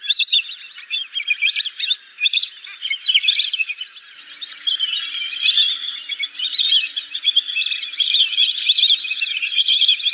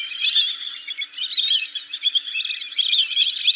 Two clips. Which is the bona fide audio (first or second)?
second